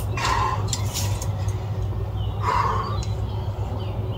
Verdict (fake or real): real